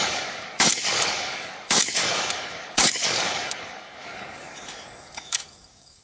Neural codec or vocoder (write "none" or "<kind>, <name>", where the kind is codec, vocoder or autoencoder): codec, DAC